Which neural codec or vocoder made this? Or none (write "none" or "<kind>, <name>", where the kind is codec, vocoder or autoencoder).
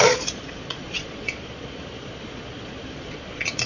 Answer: vocoder, Vocos